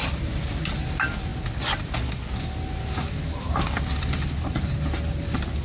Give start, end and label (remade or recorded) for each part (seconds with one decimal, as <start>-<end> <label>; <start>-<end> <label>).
0.0-5.6 recorded